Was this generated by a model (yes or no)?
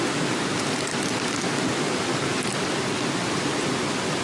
no